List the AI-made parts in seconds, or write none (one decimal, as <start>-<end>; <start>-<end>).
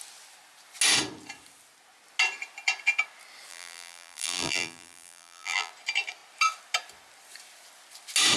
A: 3.5-5.7